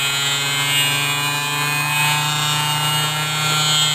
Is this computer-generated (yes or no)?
no